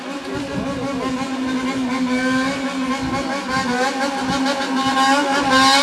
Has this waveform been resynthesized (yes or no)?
no